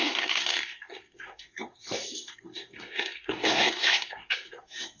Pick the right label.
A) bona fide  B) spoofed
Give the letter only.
B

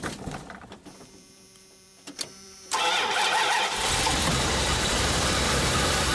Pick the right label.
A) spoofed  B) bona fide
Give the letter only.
A